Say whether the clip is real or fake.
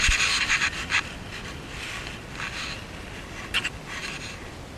real